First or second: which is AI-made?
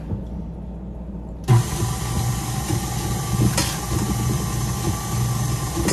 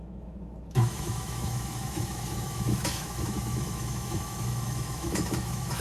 second